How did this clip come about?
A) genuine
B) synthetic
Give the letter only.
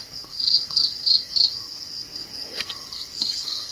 B